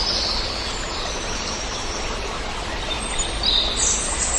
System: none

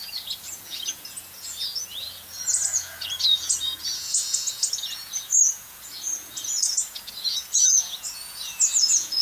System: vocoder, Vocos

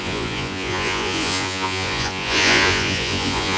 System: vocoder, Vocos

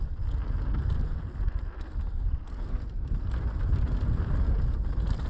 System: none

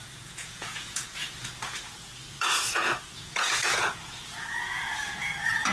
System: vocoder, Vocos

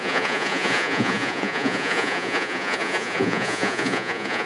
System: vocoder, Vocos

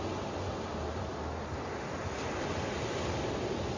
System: none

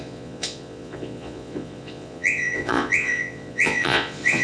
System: vocoder, Vocos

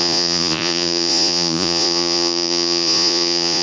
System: vocoder, Vocos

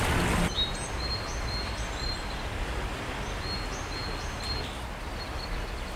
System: none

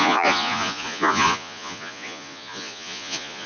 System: vocoder, Vocos